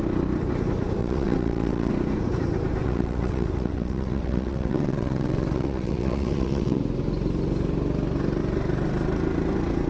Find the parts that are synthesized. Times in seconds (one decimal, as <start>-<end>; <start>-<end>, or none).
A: 1.0-1.9; 2.8-6.8